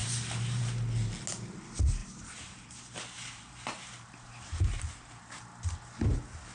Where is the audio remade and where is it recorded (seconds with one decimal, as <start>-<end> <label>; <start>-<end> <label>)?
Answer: 0.0-0.6 remade; 0.6-2.0 recorded; 2.0-5.4 remade; 5.4-6.5 recorded